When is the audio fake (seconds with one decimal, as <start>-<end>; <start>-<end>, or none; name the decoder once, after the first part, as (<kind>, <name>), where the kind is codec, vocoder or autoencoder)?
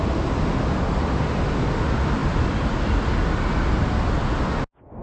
none